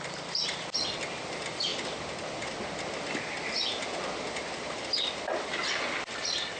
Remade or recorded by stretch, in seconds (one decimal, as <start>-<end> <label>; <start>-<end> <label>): 0.0-6.6 recorded